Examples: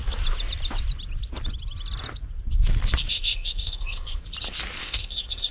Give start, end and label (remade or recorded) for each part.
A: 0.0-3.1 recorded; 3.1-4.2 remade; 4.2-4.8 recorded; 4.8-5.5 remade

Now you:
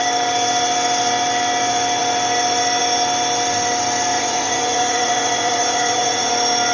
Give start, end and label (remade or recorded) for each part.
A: 0.0-4.1 recorded; 4.1-6.3 remade; 6.3-6.7 recorded

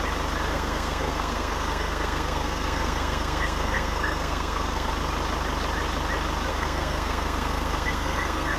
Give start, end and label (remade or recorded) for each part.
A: 0.0-0.5 recorded; 0.5-4.9 remade; 4.9-6.5 recorded; 6.5-8.6 remade

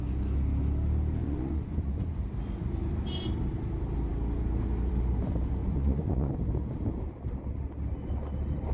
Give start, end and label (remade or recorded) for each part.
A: 0.0-1.2 recorded; 1.2-2.0 remade; 2.0-5.6 recorded; 5.6-6.3 remade; 6.3-8.7 recorded

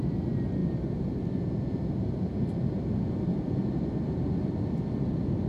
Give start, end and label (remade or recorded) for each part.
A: 0.0-5.5 recorded